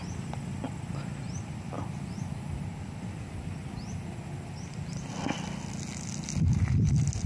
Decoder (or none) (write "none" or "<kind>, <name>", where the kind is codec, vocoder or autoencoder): none